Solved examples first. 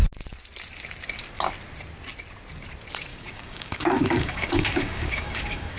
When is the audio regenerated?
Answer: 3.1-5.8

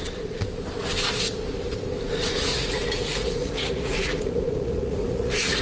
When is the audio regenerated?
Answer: 2.5-5.6

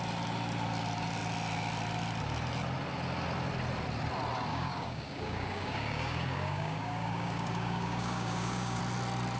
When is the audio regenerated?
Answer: 4.5-8.8

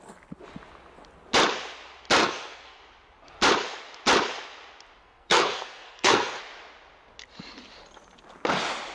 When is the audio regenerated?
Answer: 2.2-2.8; 5.0-6.4

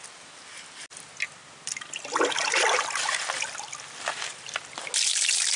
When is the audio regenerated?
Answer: none